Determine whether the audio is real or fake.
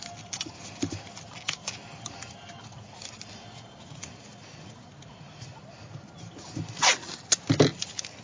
real